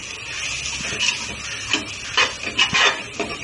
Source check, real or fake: real